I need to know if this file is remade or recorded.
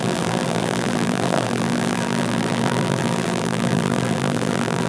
remade